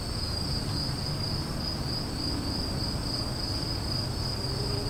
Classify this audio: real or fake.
real